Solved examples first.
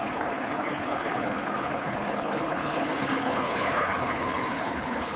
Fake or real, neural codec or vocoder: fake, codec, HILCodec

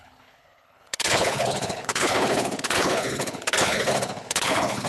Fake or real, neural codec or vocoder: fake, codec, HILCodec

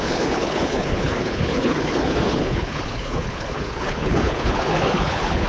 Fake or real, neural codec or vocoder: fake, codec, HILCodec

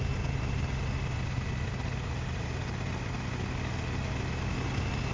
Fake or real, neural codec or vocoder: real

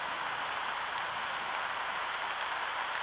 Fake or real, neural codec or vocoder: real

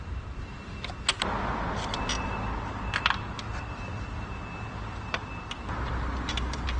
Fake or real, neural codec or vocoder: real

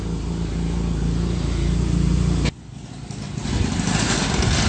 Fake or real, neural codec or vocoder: real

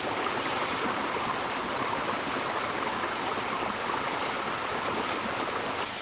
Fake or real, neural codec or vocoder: real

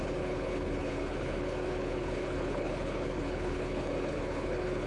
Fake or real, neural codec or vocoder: fake, codec, HILCodec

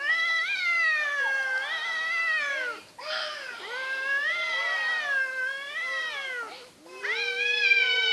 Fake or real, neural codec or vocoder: real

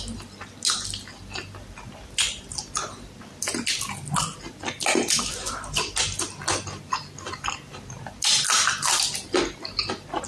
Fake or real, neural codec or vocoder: real